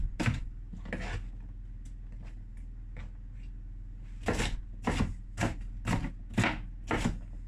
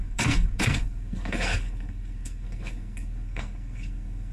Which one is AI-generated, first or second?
second